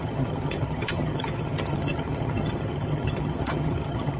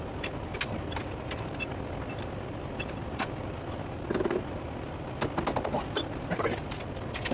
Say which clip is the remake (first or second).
first